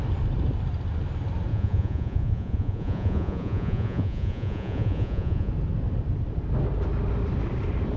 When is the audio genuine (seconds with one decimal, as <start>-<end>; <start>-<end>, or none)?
0.0-1.5; 5.5-8.0